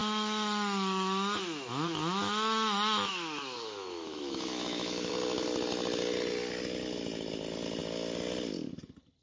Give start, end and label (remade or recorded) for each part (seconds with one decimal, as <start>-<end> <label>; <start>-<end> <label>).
0.0-5.1 remade; 5.1-9.2 recorded